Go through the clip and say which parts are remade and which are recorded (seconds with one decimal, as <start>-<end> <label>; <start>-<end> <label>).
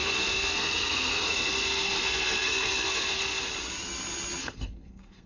0.0-3.4 remade; 3.4-4.4 recorded; 4.4-5.3 remade